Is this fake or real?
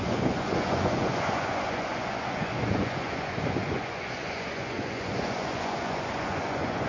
fake